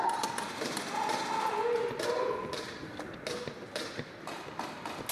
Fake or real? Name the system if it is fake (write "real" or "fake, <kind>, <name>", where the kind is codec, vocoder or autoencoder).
real